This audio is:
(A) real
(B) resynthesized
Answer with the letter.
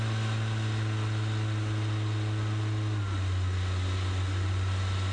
A